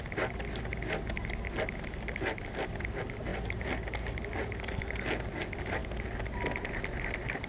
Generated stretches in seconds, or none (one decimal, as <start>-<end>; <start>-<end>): none